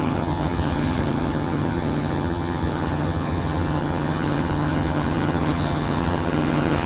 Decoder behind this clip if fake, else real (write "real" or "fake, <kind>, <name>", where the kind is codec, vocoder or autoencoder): fake, vocoder, HiFi-GAN